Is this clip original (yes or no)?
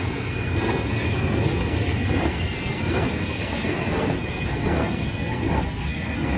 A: no